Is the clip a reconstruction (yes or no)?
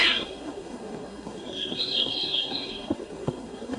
yes